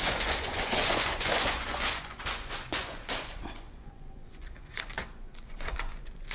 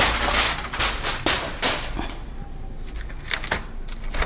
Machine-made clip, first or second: first